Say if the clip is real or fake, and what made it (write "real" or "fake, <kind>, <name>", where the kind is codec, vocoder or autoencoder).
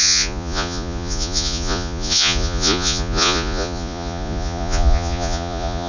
fake, vocoder, Vocos